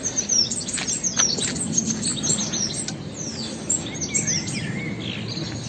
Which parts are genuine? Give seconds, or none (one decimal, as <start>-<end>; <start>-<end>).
0.0-5.7